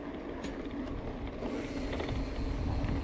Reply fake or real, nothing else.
real